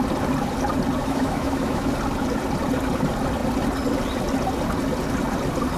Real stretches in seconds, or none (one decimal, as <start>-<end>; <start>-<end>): 0.0-1.0; 1.9-5.8